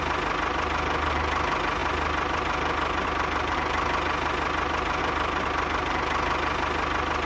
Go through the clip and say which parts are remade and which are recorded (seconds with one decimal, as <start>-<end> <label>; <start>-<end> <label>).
0.0-7.3 recorded